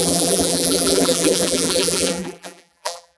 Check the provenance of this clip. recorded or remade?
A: remade